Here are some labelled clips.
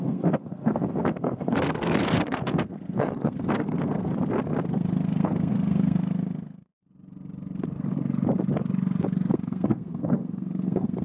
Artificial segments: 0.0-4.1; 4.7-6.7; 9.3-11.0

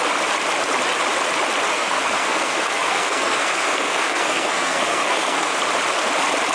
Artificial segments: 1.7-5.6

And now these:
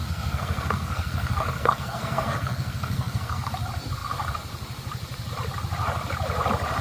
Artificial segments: 0.0-3.5

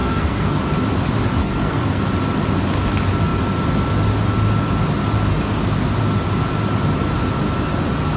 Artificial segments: 0.0-0.6; 1.4-2.0

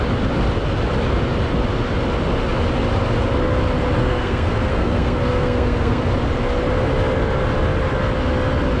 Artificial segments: 4.0-6.0

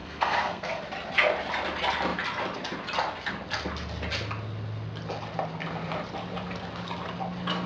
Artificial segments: 0.0-0.8

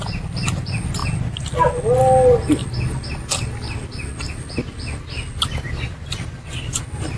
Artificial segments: none

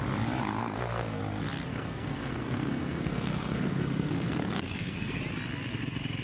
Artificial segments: 0.6-1.2; 1.7-5.2